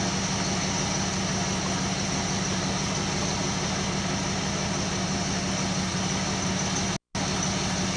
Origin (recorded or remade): recorded